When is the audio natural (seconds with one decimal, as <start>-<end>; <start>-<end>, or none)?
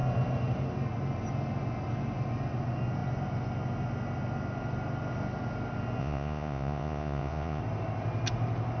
0.0-6.0; 7.6-8.8